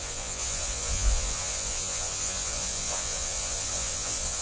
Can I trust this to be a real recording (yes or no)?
no